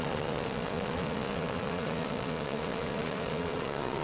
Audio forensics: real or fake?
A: fake